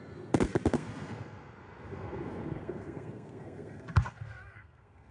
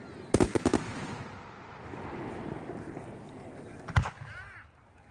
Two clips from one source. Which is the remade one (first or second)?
first